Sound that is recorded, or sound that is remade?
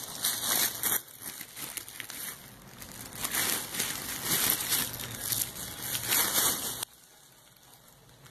recorded